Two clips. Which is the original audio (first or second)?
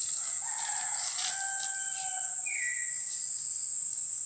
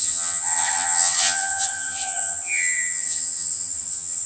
first